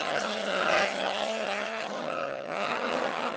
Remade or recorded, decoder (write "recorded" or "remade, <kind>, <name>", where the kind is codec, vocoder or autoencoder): remade, vocoder, HiFi-GAN